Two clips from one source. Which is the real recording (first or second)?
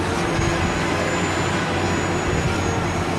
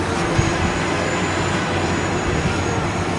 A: first